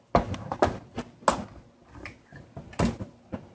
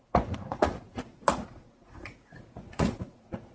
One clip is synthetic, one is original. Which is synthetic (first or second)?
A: second